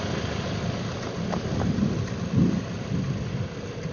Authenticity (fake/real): real